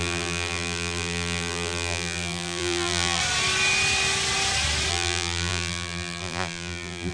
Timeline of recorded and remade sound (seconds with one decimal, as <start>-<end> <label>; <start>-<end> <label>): 0.0-3.2 remade; 3.2-4.9 recorded; 4.9-7.1 remade